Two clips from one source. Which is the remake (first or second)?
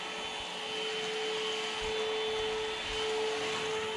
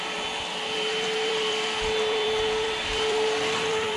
second